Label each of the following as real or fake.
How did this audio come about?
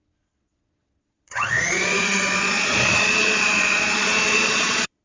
fake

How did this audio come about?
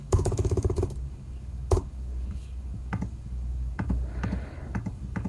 fake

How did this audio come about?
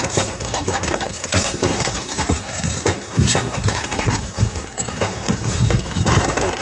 fake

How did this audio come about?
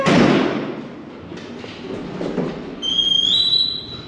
real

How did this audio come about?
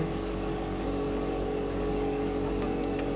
fake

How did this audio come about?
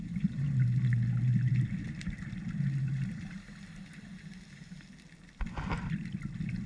real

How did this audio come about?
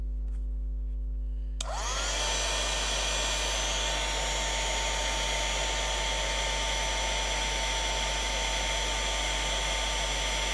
real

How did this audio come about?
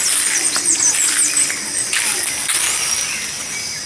real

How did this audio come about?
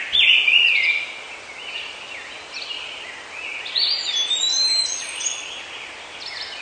real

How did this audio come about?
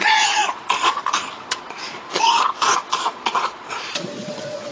fake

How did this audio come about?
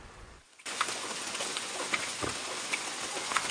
fake